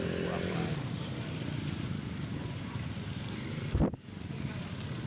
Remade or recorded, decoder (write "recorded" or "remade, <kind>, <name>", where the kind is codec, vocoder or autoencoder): recorded